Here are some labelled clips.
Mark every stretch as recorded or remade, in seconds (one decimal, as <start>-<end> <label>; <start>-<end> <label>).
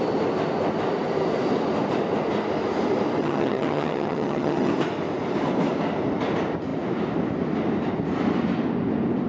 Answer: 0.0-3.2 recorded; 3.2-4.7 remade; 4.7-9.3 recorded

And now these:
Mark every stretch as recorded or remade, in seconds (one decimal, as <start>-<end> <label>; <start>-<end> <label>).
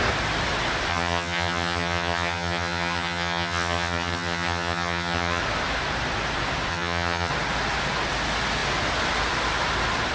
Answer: 0.0-0.9 recorded; 0.9-5.4 remade; 5.4-6.7 recorded; 6.7-7.3 remade; 7.3-10.1 recorded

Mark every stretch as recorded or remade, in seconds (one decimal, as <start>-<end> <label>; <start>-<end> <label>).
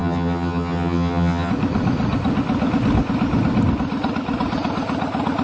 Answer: 0.0-1.5 remade; 1.5-5.4 recorded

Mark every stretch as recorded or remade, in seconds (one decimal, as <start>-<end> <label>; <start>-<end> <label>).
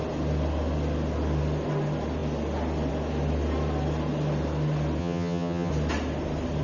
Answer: 0.0-5.0 recorded; 5.0-5.7 remade; 5.7-6.6 recorded